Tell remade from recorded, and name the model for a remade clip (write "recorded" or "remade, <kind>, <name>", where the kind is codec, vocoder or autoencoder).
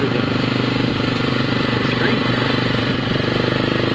remade, vocoder, BigVGAN v2